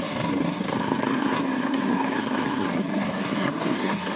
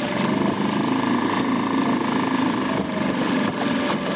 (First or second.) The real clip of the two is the second